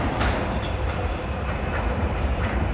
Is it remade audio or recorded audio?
remade